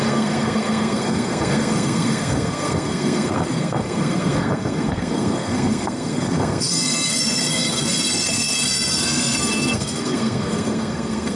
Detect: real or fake fake